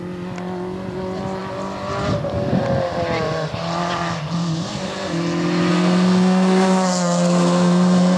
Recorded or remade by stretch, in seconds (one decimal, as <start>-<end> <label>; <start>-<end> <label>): 0.0-5.7 recorded; 5.7-8.2 remade